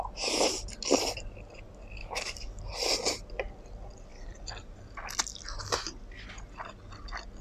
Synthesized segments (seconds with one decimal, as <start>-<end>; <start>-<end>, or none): 2.0-2.6